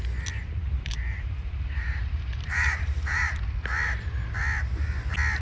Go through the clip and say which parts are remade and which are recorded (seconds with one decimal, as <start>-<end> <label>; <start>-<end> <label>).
0.0-0.6 recorded; 0.6-3.4 remade; 3.4-5.4 recorded

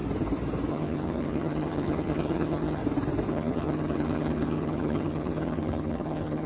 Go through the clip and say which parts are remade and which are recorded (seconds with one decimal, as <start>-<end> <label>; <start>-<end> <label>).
0.0-0.7 recorded; 0.7-2.8 remade; 2.8-3.3 recorded; 3.3-6.5 remade

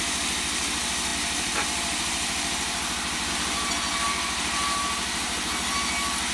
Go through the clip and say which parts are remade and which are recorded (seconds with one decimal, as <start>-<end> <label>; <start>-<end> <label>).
0.0-6.3 recorded

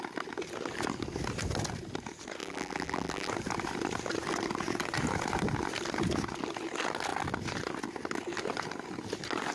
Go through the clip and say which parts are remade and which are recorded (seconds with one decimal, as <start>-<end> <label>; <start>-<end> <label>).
0.0-2.4 recorded; 2.4-3.3 remade; 3.3-9.5 recorded